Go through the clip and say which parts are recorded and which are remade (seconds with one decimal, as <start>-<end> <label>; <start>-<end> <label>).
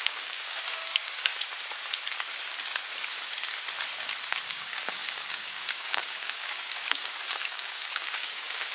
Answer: 0.0-1.3 remade; 1.3-4.5 recorded; 4.5-8.7 remade